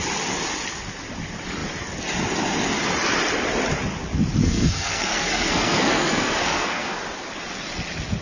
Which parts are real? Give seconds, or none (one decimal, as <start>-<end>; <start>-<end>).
0.0-4.4; 7.0-8.2